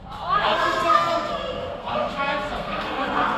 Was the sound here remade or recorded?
remade